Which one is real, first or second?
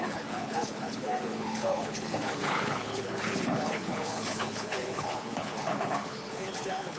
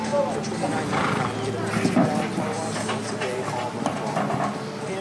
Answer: second